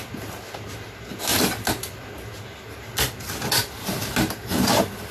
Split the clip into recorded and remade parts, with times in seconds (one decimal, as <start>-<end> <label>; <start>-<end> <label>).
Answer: 0.0-5.1 recorded